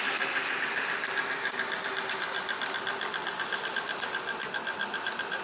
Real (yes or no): yes